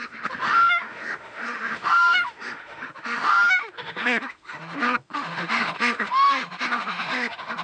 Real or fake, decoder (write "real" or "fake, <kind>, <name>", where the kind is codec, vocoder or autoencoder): fake, autoencoder, DAC-VAE